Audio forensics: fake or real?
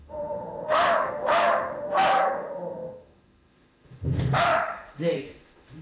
fake